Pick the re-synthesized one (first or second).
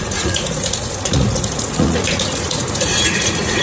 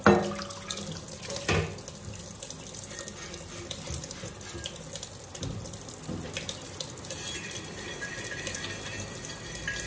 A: first